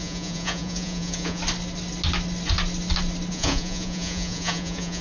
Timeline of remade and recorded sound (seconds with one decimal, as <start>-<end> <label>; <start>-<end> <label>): 0.0-1.4 remade; 1.4-3.3 recorded; 3.3-5.0 remade